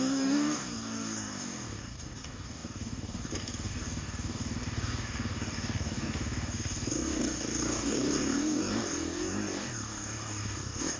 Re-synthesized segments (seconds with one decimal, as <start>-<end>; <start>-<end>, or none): 0.0-11.0